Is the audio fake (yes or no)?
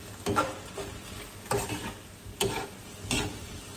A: no